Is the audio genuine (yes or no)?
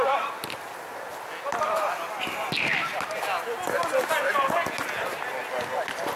yes